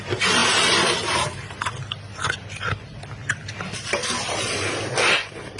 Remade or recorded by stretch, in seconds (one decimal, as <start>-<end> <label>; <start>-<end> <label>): 0.0-0.4 recorded; 0.4-1.7 remade; 1.7-3.2 recorded; 3.2-3.8 remade; 3.8-5.6 recorded

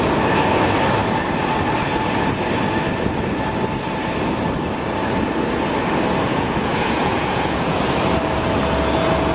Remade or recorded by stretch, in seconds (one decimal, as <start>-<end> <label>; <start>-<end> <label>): 0.0-6.3 recorded; 6.3-7.8 remade; 7.8-9.3 recorded

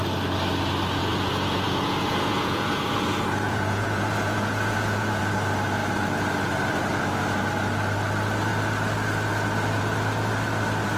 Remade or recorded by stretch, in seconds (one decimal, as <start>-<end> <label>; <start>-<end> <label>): 0.0-1.0 recorded; 1.0-5.2 remade; 5.2-11.0 recorded

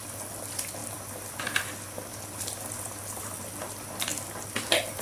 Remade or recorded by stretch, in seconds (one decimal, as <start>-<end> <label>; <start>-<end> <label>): 0.0-5.0 recorded

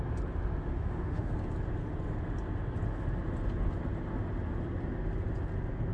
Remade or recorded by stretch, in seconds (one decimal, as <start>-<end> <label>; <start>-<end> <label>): 0.0-0.7 recorded; 0.7-1.3 remade; 1.3-5.9 recorded

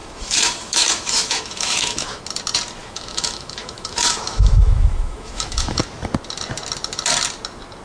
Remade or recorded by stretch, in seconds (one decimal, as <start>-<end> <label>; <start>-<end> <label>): 0.0-2.2 remade; 2.2-2.8 recorded; 2.8-5.8 remade; 5.8-7.8 recorded